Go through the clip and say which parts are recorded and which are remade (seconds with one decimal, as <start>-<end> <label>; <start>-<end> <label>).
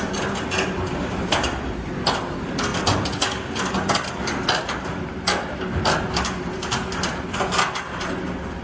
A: 0.0-8.6 recorded